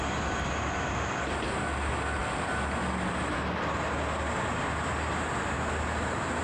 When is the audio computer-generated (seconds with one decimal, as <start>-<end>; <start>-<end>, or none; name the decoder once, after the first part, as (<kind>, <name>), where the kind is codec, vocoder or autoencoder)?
none